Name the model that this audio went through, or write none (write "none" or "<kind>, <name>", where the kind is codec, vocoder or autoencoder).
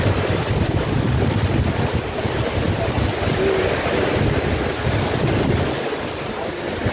none